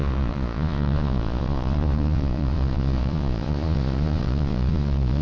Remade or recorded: remade